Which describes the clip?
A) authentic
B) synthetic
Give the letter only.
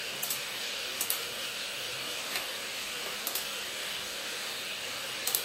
B